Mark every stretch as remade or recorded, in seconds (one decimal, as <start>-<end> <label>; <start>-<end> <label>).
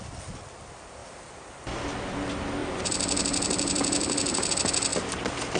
0.0-2.6 recorded; 2.6-4.5 remade; 4.5-5.6 recorded